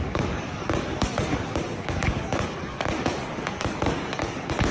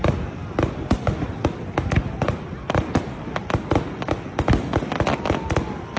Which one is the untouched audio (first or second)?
second